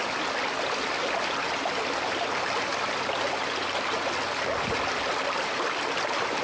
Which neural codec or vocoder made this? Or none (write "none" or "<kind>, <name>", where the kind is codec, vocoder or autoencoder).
none